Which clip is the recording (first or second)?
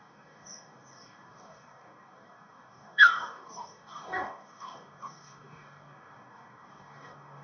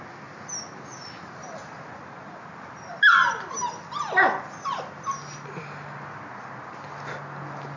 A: second